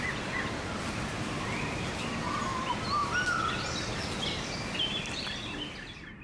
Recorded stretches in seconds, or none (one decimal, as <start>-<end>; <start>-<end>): 0.0-6.2